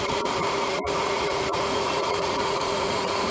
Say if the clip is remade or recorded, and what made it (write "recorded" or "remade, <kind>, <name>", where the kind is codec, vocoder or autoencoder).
remade, vocoder, Vocos